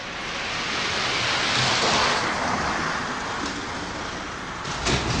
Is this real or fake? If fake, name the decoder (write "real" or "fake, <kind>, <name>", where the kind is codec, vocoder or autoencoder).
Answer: real